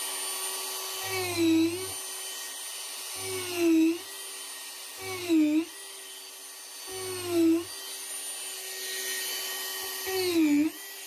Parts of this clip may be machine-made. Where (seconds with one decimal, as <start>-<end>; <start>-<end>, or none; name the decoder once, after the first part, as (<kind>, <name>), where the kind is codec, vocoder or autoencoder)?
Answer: none